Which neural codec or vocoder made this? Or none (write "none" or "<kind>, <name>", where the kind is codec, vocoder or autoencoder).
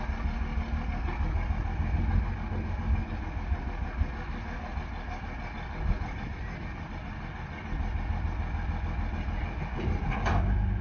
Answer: none